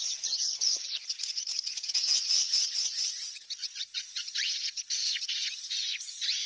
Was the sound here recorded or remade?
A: remade